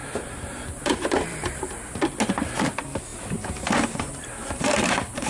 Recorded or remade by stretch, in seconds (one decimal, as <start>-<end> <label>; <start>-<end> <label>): 0.0-2.0 remade; 2.0-3.1 recorded; 3.1-5.3 remade